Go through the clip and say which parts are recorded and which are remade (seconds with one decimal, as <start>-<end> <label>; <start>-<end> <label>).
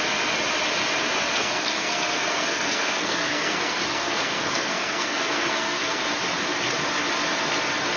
0.0-1.4 recorded; 1.4-6.0 remade; 6.0-8.0 recorded